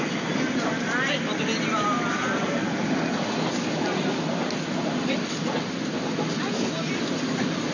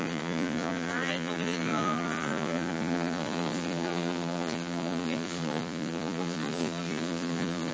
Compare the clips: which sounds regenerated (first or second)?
second